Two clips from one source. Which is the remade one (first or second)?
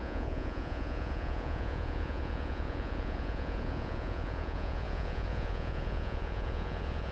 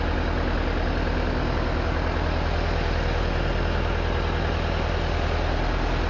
first